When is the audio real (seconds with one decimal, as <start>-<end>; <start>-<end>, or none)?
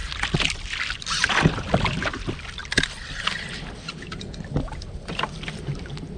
0.0-6.2